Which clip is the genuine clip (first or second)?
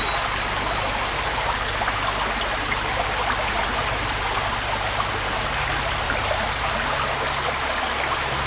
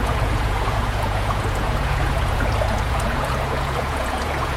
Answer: first